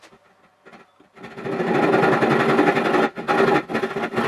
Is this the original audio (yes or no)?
yes